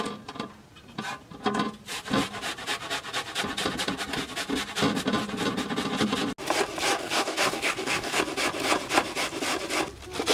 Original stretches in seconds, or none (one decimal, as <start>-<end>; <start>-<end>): 0.0-6.9; 8.2-10.3